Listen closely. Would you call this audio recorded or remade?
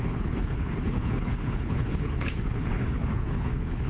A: remade